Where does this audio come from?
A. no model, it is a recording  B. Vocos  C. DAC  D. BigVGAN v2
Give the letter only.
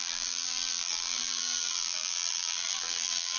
D